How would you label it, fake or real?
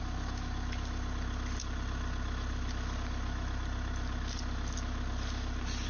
real